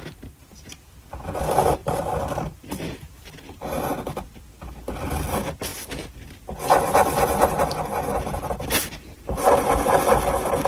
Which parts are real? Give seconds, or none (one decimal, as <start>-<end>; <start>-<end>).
0.0-1.8; 3.3-8.8; 10.1-10.7